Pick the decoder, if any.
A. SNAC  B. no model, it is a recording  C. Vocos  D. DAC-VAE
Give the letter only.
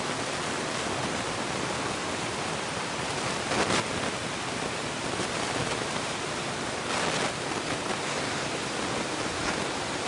B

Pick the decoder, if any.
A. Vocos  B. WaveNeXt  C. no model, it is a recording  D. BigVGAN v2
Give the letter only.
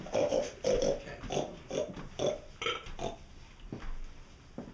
C